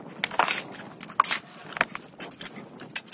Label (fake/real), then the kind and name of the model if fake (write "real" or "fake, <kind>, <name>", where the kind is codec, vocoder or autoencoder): real